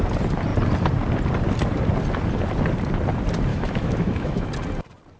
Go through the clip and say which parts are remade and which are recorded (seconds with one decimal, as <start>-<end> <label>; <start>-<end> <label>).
0.0-3.5 recorded; 3.5-4.5 remade; 4.5-5.2 recorded